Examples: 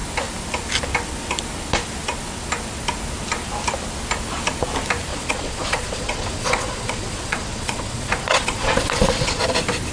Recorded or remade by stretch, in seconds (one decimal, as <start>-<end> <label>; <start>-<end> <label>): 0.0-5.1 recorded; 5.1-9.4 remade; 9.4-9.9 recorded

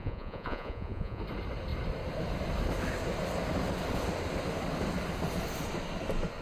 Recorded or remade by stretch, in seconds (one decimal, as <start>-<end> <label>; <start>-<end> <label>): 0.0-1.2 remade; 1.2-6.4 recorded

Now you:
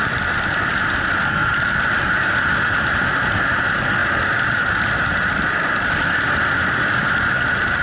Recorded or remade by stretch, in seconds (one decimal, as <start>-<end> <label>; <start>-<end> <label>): 0.0-7.8 recorded

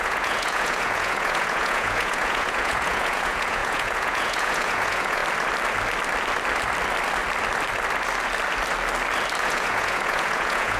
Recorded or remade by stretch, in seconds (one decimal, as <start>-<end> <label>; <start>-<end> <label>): 0.0-5.2 remade; 5.2-9.4 recorded; 9.4-10.8 remade

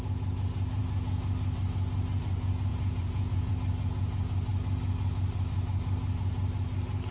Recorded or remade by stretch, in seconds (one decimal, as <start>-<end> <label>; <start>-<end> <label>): 0.0-2.7 recorded; 2.7-3.5 remade; 3.5-7.1 recorded

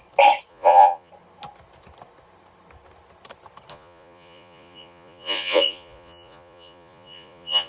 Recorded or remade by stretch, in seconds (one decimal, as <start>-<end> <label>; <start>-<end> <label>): 0.0-0.5 recorded; 0.5-1.1 remade; 1.1-3.7 recorded; 3.7-7.7 remade

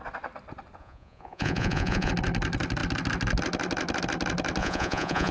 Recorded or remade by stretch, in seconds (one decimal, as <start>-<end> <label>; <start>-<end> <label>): 0.0-0.8 recorded; 0.8-2.1 remade; 2.1-4.6 recorded; 4.6-5.3 remade